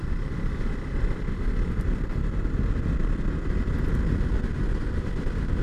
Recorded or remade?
recorded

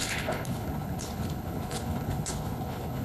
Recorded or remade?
remade